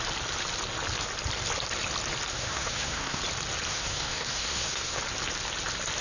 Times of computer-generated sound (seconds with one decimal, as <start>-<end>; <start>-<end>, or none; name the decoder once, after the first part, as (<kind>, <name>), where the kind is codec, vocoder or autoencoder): 2.3-3.2 (codec, SNAC); 3.7-5.0